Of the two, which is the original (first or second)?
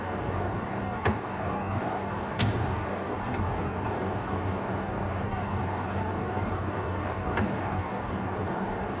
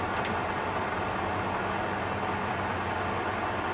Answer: second